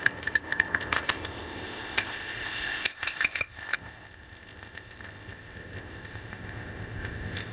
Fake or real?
fake